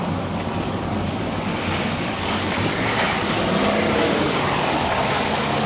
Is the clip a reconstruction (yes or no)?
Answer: yes